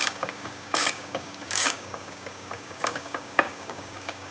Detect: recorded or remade remade